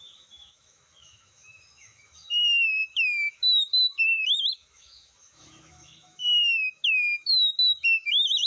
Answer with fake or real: fake